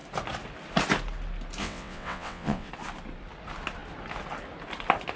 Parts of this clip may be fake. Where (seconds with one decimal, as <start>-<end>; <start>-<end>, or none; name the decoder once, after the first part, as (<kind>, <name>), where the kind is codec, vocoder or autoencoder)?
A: 1.6-2.7 (vocoder, WaveNeXt)